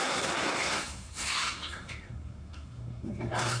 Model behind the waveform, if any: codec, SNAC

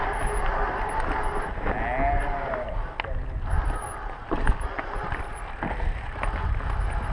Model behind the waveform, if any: none